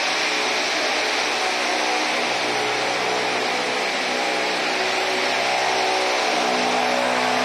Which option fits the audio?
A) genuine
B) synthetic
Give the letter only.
A